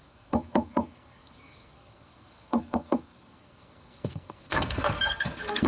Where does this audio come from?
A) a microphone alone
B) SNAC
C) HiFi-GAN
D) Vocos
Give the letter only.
B